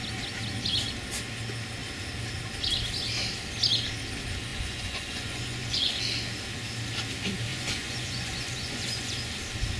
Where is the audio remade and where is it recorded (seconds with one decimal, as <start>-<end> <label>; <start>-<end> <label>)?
0.0-4.5 recorded; 4.5-6.0 remade; 6.0-7.5 recorded; 7.5-9.2 remade; 9.2-9.8 recorded